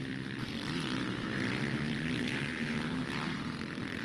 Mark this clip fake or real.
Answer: fake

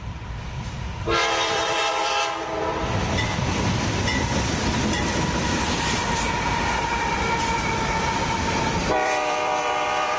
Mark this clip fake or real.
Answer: fake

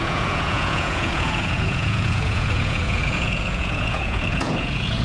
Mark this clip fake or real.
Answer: fake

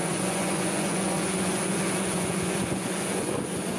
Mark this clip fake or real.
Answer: fake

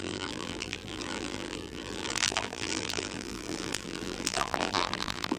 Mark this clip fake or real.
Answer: fake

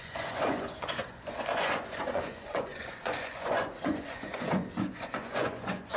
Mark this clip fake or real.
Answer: fake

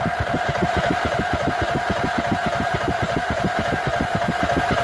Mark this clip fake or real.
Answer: fake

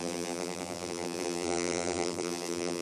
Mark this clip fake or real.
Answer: fake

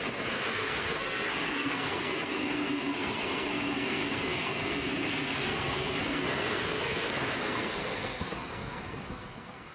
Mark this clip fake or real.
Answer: fake